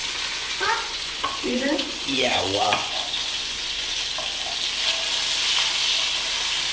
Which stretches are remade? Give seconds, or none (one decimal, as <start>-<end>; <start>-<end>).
0.0-4.0